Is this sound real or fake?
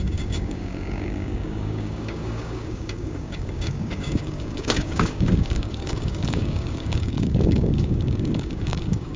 fake